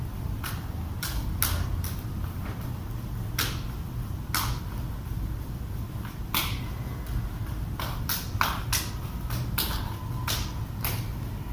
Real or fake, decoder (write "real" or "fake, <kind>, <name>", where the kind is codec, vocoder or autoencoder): real